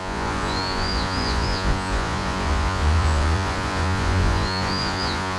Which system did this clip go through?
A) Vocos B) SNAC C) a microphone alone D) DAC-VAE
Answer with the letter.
A